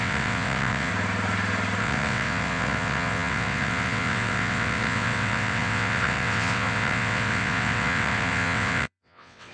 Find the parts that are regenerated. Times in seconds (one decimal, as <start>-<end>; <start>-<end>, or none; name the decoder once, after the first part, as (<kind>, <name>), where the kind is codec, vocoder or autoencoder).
0.0-0.9 (vocoder, WaveNeXt); 1.8-9.5